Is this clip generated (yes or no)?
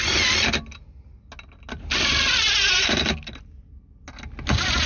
no